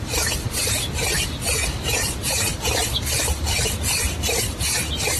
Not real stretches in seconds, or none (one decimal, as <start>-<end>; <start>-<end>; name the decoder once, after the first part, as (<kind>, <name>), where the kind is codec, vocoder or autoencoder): none